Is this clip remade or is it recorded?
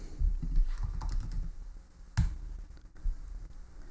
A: recorded